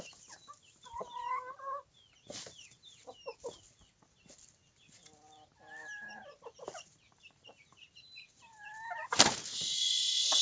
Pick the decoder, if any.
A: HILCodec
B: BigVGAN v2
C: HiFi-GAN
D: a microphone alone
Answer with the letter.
D